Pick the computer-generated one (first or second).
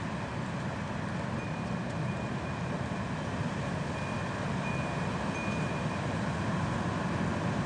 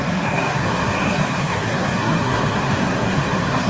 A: second